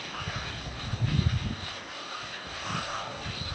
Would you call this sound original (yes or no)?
no